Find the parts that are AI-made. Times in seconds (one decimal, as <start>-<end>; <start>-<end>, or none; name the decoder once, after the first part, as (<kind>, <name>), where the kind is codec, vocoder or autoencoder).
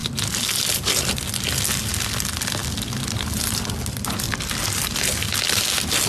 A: none